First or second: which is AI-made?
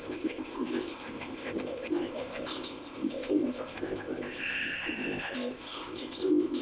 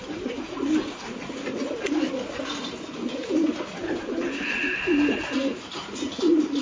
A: first